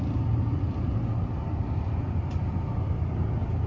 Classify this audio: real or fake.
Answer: real